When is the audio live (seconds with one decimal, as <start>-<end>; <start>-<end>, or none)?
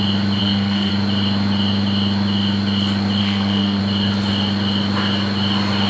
0.0-0.4; 0.9-3.2; 3.8-5.9